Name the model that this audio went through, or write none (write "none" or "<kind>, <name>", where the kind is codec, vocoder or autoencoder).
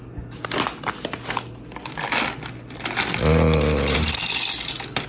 none